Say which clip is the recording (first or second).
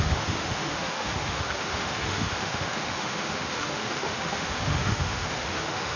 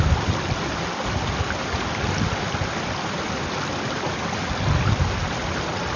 second